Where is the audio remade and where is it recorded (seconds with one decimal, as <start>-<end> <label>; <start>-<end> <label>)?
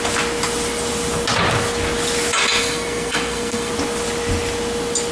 0.0-2.6 recorded; 2.6-3.7 remade; 3.7-5.1 recorded